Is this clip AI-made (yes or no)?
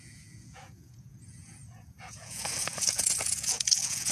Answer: yes